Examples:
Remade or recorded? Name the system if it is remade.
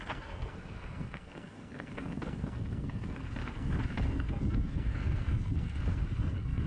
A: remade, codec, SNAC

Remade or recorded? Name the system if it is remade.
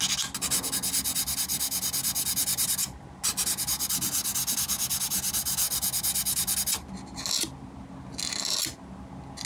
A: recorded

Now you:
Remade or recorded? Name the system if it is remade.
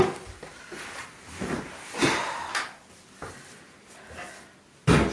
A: recorded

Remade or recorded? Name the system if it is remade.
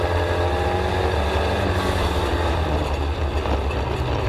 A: recorded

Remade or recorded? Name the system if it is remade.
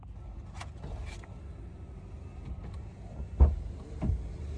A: recorded